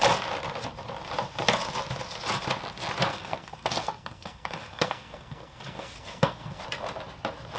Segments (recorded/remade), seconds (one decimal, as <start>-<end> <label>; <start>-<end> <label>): 0.0-3.1 recorded; 3.1-6.6 remade; 6.6-7.6 recorded